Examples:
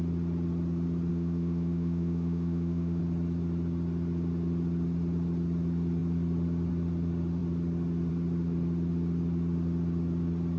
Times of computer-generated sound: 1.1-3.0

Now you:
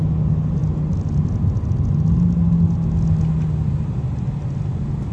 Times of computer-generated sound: none

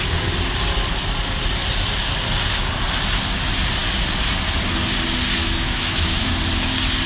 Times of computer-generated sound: 5.4-6.3